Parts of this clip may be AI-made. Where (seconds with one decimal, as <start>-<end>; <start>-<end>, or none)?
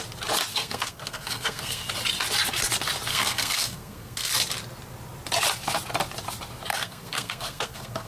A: 0.5-1.9; 3.1-4.3; 6.7-8.1